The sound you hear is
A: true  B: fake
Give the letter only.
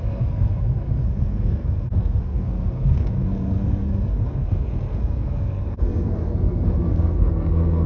B